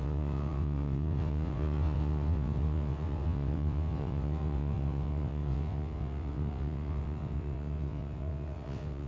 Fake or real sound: fake